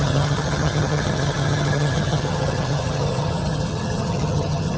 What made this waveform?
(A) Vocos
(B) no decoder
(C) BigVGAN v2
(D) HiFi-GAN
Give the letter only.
D